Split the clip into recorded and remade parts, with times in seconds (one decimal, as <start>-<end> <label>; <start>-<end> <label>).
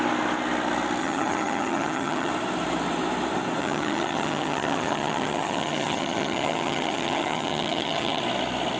0.0-1.0 recorded; 1.0-2.3 remade; 2.3-3.6 recorded; 3.6-8.2 remade; 8.2-8.8 recorded